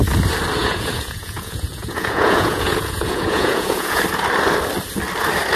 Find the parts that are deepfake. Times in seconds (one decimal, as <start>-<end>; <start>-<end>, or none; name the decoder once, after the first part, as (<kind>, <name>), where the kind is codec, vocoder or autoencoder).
0.6-4.0 (vocoder, Vocos)